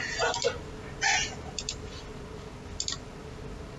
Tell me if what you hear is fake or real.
real